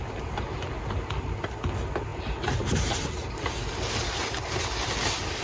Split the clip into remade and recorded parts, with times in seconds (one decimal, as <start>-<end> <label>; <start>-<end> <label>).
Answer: 0.0-5.4 recorded